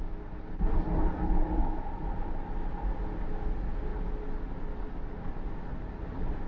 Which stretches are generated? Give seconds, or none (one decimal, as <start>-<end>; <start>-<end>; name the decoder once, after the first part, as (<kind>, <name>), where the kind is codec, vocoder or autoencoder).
none